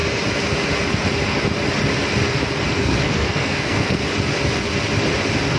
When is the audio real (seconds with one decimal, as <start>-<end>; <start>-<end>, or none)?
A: 0.0-2.8; 4.0-5.6